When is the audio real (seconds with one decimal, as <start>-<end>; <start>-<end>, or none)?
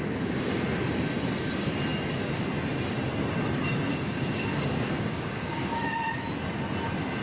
0.0-3.9; 5.9-7.2